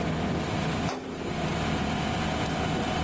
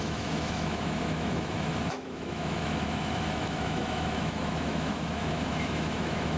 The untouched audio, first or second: first